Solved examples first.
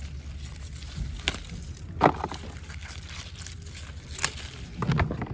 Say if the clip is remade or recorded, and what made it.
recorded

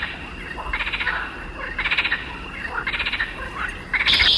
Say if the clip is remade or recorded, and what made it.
recorded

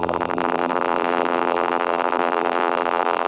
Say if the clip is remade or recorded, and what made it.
remade, vocoder, BigVGAN v2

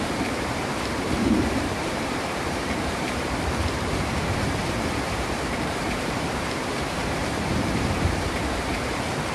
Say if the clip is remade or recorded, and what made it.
remade, vocoder, BigVGAN v2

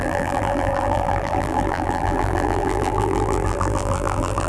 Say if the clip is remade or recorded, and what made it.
remade, vocoder, BigVGAN v2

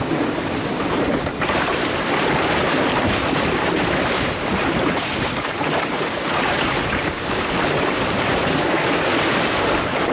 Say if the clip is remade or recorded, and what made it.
remade, vocoder, BigVGAN v2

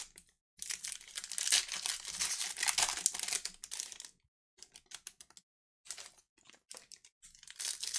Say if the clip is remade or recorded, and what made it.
recorded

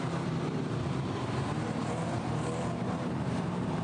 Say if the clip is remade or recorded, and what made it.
remade, vocoder, BigVGAN v2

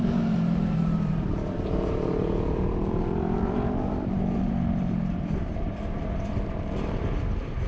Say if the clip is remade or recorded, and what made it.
remade, vocoder, BigVGAN v2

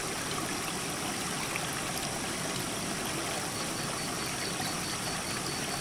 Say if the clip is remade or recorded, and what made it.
recorded